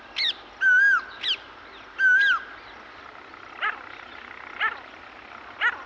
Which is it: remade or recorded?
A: recorded